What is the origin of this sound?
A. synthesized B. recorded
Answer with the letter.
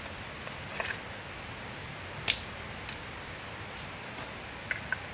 B